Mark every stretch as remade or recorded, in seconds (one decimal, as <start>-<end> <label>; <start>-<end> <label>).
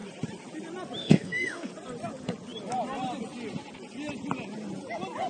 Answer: 0.0-1.0 recorded; 1.0-1.7 remade; 1.7-5.3 recorded